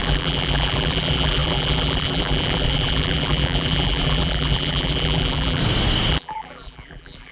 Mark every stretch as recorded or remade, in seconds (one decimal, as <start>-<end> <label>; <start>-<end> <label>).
0.0-5.6 remade; 5.6-6.1 recorded; 6.1-7.3 remade